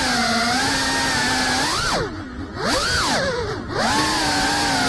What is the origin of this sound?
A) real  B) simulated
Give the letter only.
A